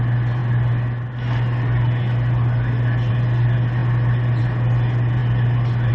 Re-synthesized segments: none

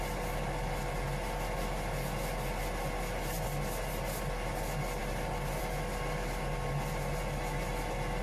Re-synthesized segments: none